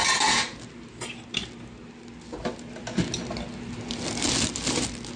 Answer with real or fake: real